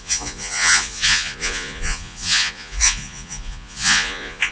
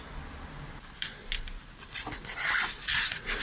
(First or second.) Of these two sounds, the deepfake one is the first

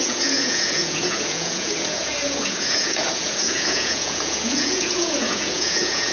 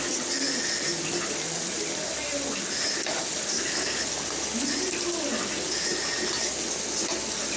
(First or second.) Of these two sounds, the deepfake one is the first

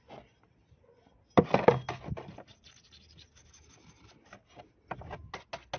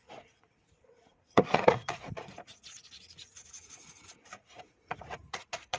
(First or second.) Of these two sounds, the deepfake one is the second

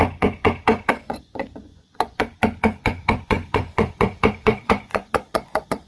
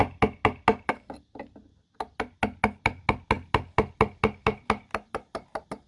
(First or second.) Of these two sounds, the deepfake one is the first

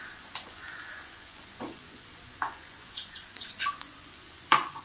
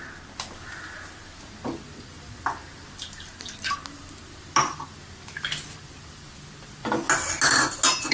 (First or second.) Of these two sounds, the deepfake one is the first